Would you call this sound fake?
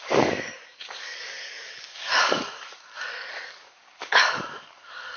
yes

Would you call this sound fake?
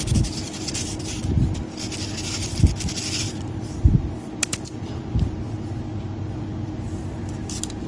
no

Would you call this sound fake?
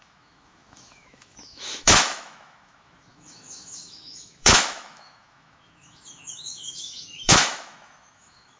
yes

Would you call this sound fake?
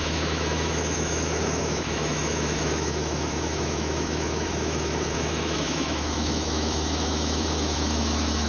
yes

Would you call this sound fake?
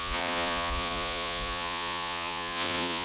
yes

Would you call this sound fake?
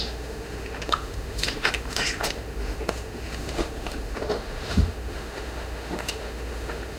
yes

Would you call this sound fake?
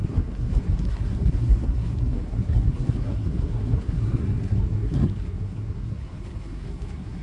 yes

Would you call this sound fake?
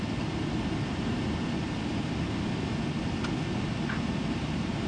yes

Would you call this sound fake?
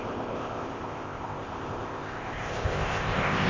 yes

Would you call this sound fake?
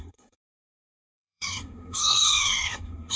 yes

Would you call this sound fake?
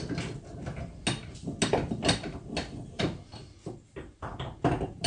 no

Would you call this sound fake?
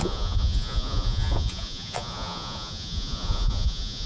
yes